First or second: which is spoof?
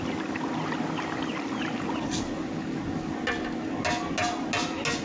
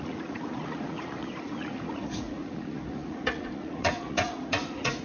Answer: second